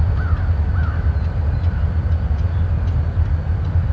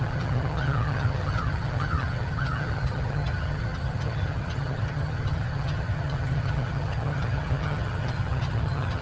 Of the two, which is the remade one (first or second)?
second